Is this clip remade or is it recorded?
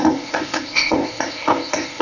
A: remade